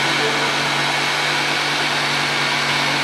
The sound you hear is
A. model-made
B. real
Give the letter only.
B